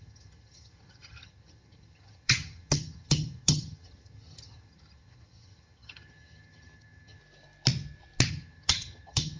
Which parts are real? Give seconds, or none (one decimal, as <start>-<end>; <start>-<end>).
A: 7.2-8.3